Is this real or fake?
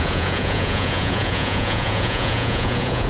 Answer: fake